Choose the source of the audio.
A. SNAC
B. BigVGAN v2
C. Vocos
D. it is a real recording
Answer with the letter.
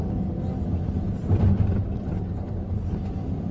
D